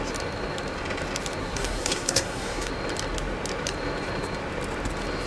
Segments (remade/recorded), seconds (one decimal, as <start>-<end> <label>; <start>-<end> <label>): 0.0-1.4 recorded; 1.4-2.7 remade; 2.7-5.3 recorded

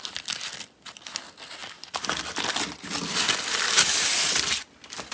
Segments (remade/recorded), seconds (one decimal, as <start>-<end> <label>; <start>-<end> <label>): 0.0-5.1 recorded